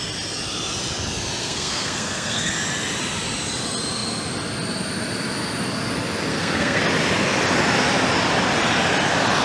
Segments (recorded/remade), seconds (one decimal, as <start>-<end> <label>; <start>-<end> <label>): 0.0-1.4 recorded; 1.4-2.5 remade; 2.5-6.3 recorded; 6.3-6.8 remade; 6.8-9.4 recorded